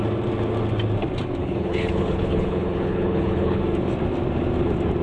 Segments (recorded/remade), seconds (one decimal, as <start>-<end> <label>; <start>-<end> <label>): 0.0-1.4 recorded; 1.4-3.6 remade; 3.6-5.0 recorded